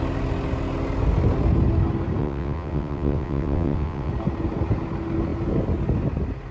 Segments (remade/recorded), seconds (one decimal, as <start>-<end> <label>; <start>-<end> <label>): 0.0-2.2 recorded; 2.2-4.1 remade; 4.1-6.5 recorded